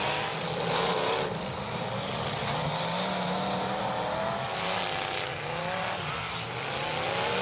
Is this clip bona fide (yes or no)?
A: yes